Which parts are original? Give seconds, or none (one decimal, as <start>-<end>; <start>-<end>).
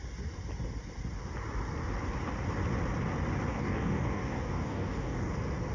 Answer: 0.0-3.5; 5.3-5.7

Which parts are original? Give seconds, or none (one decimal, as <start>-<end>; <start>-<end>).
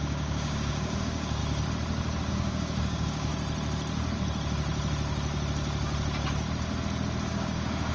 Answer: 1.4-2.3; 3.3-7.3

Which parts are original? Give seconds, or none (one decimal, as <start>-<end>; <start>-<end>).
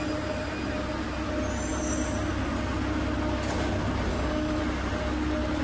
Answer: 0.0-4.1; 4.6-5.6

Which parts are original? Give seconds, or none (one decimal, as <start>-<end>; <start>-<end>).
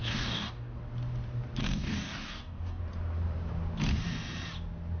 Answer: 0.8-1.6; 2.8-5.0